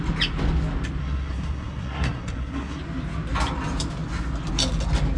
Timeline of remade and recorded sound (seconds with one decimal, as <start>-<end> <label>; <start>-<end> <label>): 0.0-1.0 recorded; 1.0-2.8 remade; 2.8-5.2 recorded

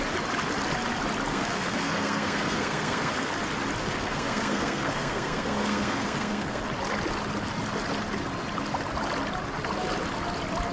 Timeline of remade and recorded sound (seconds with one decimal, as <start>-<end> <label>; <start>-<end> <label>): 0.0-1.3 recorded; 1.3-3.3 remade; 3.3-3.8 recorded; 3.8-6.6 remade; 6.6-10.7 recorded

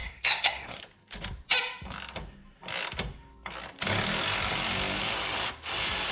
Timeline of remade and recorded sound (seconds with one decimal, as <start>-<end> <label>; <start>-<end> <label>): 0.0-0.8 remade; 0.8-6.1 recorded

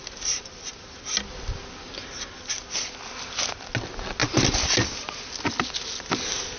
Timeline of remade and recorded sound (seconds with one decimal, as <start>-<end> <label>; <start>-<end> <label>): 0.0-6.6 recorded

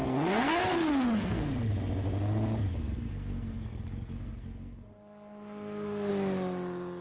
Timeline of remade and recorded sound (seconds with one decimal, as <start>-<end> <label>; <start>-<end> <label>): 0.0-1.4 remade; 1.4-2.7 recorded; 2.7-6.1 remade; 6.1-7.0 recorded

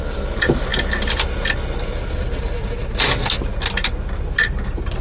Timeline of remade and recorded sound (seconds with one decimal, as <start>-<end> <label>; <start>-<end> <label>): 0.0-5.0 recorded

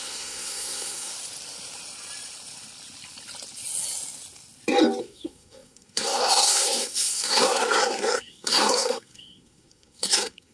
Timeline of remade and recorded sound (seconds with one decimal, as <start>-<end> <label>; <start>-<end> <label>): 0.0-1.1 remade; 1.1-5.0 recorded; 5.0-10.5 remade

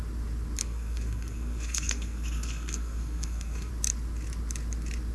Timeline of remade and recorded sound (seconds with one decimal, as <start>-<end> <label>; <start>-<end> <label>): 0.0-0.6 recorded; 0.6-3.7 remade; 3.7-5.1 recorded